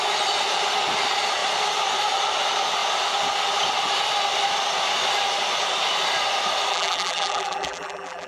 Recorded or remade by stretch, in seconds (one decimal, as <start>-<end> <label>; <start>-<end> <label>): 0.0-6.7 recorded; 6.7-8.3 remade